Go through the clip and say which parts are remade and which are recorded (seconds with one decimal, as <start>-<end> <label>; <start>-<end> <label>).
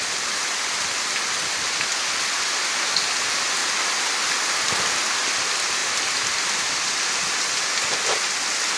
0.0-8.8 recorded